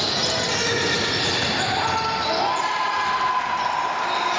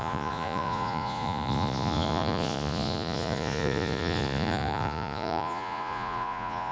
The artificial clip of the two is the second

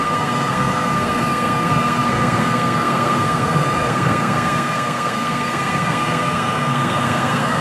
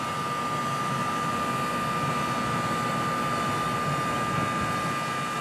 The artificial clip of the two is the first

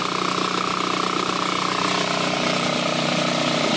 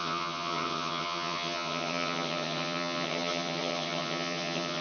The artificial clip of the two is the second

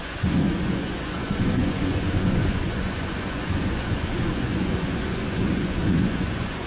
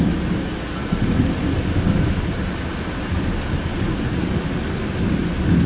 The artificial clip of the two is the first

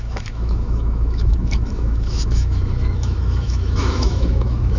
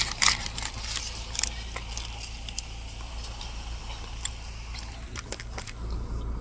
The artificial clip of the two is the first